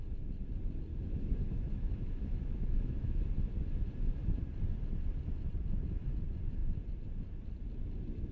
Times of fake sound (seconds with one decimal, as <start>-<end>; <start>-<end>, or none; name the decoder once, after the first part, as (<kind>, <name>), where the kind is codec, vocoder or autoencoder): 0.9-3.3 (autoencoder, DAC-VAE)

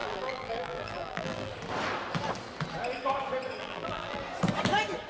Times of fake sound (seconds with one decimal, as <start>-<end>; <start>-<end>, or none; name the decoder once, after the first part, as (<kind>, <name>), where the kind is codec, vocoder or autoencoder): 0.0-1.5 (vocoder, BigVGAN v2); 3.6-4.2

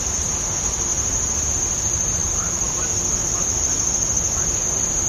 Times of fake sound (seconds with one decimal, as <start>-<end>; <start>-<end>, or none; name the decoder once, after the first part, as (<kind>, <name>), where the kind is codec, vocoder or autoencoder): none

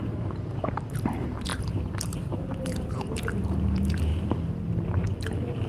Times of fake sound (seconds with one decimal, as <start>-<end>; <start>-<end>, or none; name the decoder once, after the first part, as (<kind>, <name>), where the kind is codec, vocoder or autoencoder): 0.0-4.1 (vocoder, BigVGAN v2)

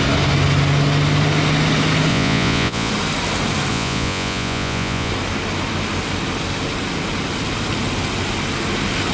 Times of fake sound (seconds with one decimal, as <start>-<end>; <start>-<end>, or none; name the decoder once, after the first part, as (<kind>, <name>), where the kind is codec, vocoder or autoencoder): 2.1-2.9 (vocoder, Vocos); 3.7-5.1

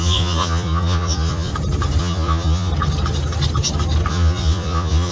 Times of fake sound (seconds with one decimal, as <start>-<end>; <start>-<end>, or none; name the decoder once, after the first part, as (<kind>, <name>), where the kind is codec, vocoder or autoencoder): 0.0-1.5 (vocoder, Vocos); 2.0-2.7; 4.1-5.1